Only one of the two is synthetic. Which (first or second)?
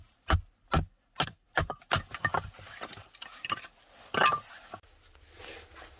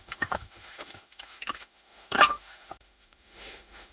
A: second